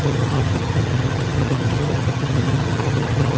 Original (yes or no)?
no